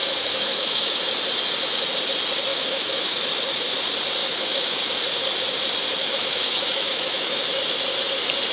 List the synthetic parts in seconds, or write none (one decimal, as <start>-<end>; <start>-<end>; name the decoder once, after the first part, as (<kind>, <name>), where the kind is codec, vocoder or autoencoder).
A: 0.0-1.0 (autoencoder, DAC-VAE); 2.5-3.2; 4.2-4.9; 6.0-7.4